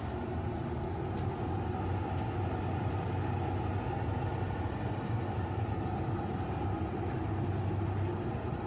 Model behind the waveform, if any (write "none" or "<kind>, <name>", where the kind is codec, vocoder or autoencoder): none